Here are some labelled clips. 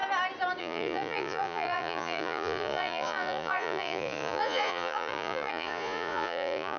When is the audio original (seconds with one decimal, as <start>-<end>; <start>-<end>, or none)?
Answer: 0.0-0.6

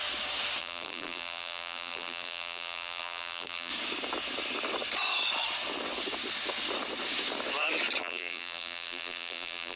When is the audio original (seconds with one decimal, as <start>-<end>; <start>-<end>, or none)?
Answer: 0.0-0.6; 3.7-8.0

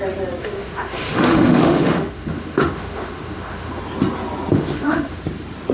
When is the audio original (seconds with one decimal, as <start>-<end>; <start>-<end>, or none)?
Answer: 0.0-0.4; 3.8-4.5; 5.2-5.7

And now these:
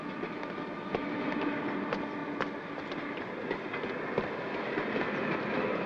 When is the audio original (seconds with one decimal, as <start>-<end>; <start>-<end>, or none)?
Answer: 0.0-5.9

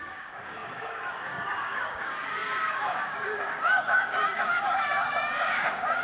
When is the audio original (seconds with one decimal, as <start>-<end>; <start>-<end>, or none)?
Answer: none

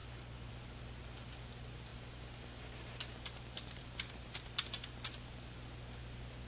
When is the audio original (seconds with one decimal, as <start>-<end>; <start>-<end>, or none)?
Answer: 0.5-6.5